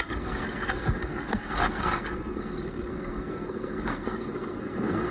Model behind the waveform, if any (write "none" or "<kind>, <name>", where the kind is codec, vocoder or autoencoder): codec, SNAC